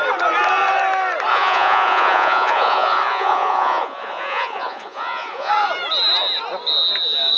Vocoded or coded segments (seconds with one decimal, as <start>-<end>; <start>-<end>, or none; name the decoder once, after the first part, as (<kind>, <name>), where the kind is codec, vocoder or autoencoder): 1.3-5.5 (vocoder, Vocos)